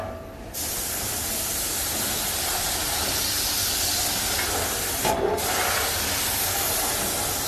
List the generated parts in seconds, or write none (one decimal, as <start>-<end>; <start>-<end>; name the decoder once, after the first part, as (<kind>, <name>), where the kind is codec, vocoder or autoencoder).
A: none